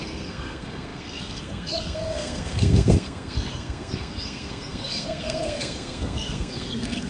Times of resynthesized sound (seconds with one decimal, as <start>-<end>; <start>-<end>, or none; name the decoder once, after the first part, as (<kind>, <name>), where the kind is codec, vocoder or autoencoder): 0.0-7.1 (codec, SNAC)